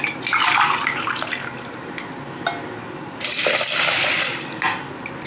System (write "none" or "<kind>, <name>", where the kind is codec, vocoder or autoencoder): none